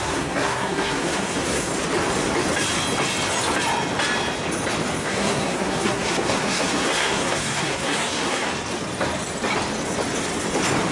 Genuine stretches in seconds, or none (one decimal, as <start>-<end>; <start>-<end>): 1.7-5.0; 8.5-10.9